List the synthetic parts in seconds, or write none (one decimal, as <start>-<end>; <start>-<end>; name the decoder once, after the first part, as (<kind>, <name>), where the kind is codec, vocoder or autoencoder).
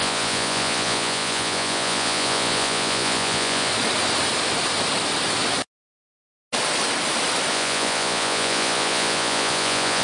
0.0-3.7 (vocoder, Vocos); 7.5-10.0